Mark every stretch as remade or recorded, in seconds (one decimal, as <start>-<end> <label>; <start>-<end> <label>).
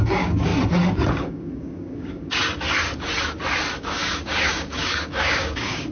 0.0-0.5 remade; 0.5-1.1 recorded; 1.1-2.4 remade; 2.4-3.7 recorded; 3.7-5.9 remade